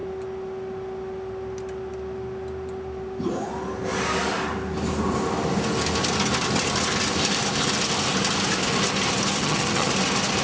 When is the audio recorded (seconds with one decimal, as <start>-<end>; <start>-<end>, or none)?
0.0-9.4; 9.9-10.4